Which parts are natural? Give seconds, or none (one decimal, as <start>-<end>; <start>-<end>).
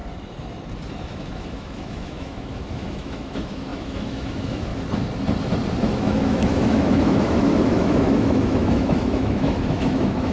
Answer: 0.0-1.0; 4.7-5.8